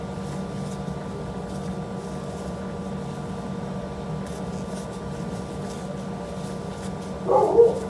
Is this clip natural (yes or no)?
yes